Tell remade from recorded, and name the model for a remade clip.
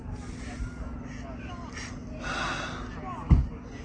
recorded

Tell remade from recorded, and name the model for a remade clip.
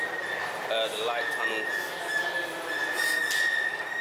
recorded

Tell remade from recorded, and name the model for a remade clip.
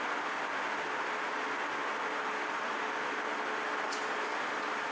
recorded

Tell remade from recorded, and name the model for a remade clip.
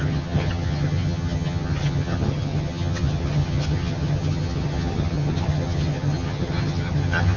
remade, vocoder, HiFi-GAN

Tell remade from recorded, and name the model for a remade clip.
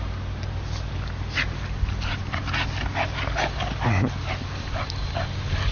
recorded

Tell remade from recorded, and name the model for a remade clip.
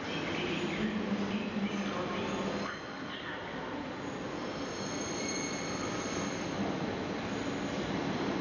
recorded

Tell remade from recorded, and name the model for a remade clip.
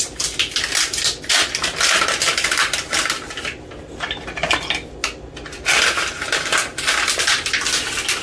recorded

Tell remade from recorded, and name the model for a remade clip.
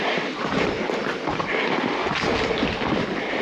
recorded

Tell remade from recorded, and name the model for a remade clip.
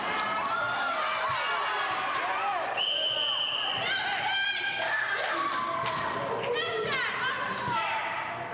recorded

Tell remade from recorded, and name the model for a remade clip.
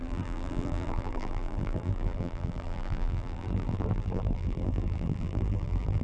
remade, vocoder, BigVGAN v2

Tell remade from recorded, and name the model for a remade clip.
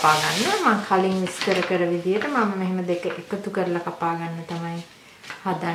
recorded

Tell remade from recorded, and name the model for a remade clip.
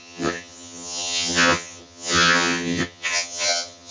remade, vocoder, HiFi-GAN